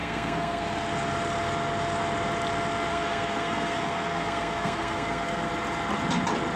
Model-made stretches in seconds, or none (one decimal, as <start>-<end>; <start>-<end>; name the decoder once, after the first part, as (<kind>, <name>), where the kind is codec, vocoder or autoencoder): 0.0-0.6 (codec, SNAC); 2.9-5.5